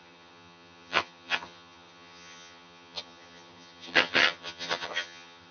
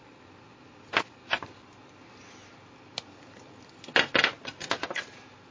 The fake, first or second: first